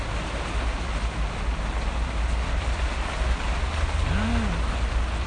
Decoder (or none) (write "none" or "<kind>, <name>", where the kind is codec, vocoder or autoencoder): none